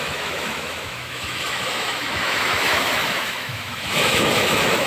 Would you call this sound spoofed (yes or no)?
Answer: yes